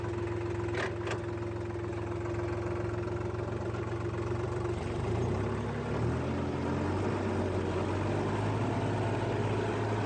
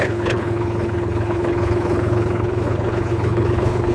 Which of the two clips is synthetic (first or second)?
second